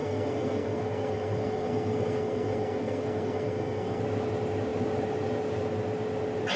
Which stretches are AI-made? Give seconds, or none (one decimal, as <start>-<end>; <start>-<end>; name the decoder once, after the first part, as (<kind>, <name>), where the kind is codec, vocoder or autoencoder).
0.0-4.0 (codec, SNAC)